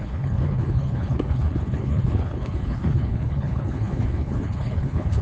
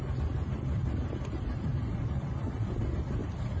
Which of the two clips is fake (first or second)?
first